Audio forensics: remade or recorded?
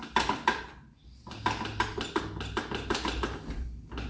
recorded